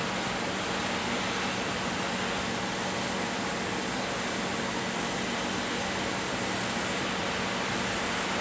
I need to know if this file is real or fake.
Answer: real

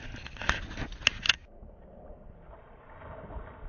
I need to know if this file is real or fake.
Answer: real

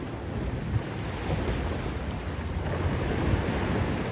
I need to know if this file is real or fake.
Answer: real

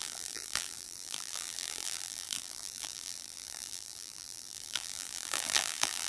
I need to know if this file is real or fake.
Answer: fake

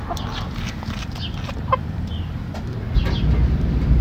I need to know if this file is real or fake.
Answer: real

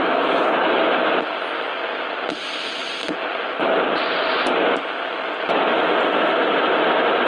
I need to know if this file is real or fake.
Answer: real